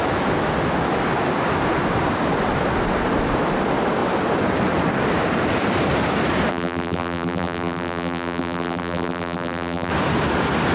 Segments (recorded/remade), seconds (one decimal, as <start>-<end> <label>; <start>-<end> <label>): 0.0-6.5 recorded; 6.5-9.9 remade; 9.9-10.7 recorded